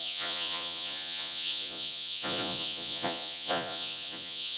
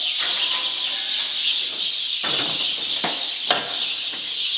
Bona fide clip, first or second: second